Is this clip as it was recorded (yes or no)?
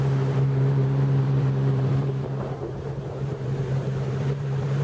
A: no